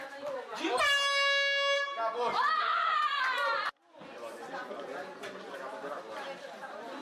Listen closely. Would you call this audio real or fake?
real